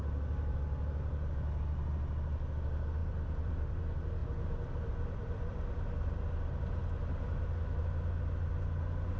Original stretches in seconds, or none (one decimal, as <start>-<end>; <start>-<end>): 0.0-3.0; 3.8-4.2; 6.1-9.2